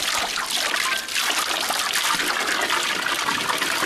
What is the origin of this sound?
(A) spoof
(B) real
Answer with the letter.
B